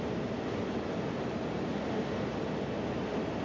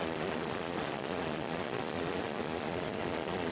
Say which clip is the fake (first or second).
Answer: second